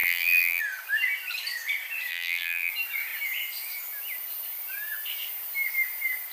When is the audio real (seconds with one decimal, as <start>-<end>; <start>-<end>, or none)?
0.6-2.1; 2.7-6.3